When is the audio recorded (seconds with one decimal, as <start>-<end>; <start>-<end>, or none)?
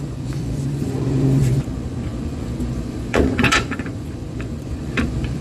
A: none